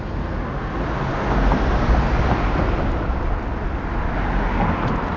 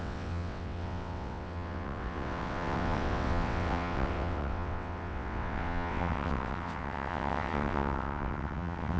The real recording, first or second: first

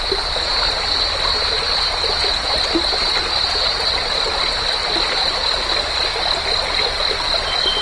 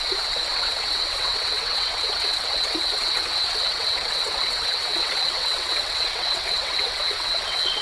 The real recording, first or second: first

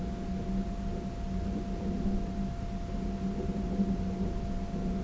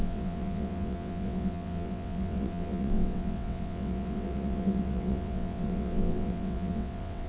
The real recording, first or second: first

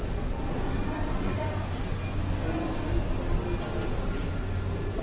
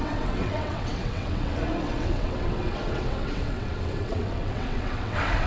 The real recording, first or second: first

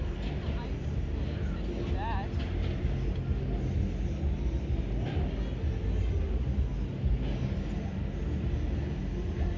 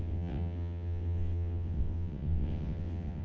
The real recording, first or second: first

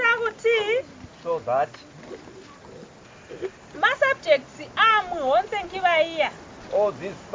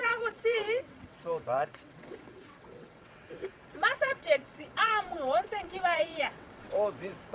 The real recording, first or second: first